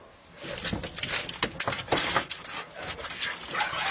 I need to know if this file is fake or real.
real